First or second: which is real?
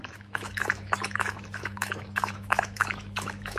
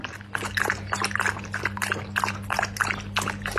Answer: second